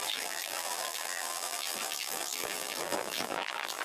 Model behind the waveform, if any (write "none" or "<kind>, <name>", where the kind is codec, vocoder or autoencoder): vocoder, BigVGAN v2